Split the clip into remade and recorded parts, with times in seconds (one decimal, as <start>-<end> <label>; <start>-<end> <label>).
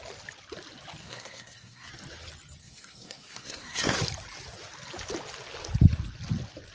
0.0-1.0 recorded; 1.0-1.9 remade; 1.9-2.6 recorded; 2.6-4.0 remade; 4.0-6.7 recorded